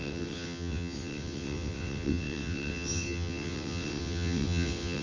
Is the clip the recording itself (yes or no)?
no